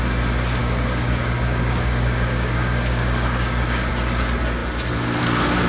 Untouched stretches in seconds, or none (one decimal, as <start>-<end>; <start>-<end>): 0.0-0.6; 3.9-5.7